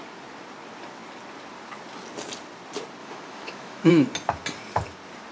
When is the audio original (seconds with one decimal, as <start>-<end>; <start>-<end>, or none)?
0.0-3.0; 3.9-5.3